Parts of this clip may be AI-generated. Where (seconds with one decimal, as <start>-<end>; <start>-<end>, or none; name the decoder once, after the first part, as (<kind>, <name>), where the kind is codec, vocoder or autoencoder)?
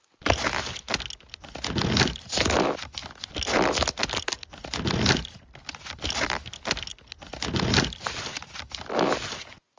none